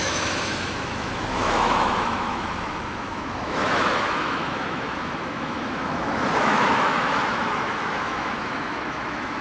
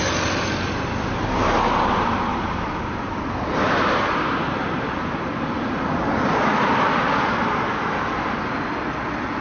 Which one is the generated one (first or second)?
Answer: first